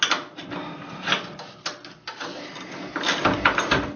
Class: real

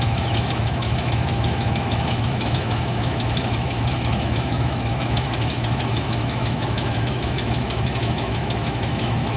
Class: fake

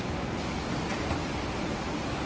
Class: real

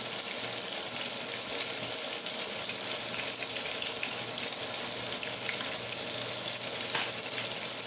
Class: real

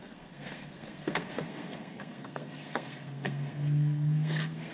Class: fake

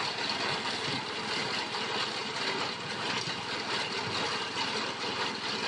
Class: real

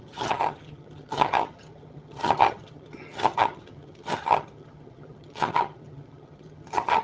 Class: fake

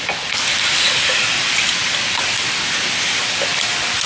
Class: real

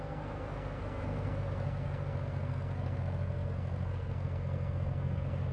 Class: fake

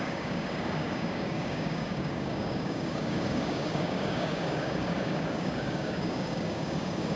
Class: fake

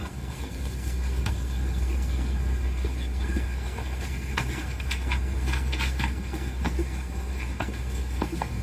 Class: fake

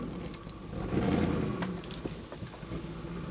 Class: real